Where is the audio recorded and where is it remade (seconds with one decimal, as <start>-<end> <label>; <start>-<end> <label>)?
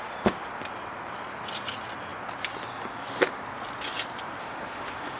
0.0-4.4 recorded; 4.4-5.2 remade